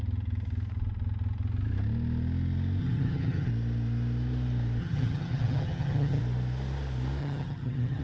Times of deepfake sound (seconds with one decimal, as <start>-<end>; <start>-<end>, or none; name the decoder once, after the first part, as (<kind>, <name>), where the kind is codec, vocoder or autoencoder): 2.8-3.5 (vocoder, HiFi-GAN); 4.8-6.2; 7.2-8.0